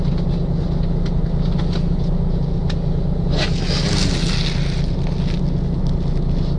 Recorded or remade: recorded